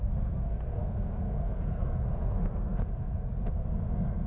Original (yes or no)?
no